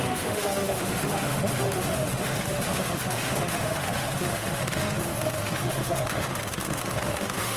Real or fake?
fake